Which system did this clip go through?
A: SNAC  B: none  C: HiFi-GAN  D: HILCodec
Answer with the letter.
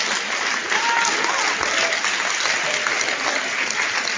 B